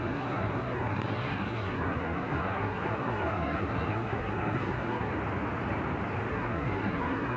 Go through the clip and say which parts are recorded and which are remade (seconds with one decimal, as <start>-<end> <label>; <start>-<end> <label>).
0.0-5.1 remade; 5.1-6.3 recorded; 6.3-7.4 remade